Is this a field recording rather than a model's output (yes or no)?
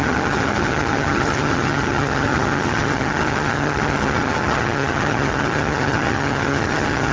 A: no